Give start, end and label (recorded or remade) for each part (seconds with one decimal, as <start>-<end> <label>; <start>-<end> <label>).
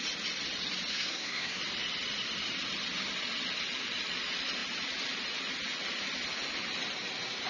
0.0-0.9 recorded; 0.9-1.6 remade; 1.6-7.5 recorded